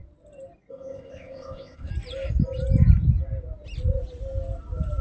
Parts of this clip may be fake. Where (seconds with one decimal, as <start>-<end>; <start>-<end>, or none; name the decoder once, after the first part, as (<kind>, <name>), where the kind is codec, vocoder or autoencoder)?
0.7-1.9 (codec, ZipCodec)